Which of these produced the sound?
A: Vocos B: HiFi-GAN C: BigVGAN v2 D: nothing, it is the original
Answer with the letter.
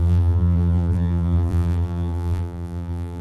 C